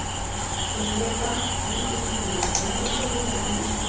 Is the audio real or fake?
real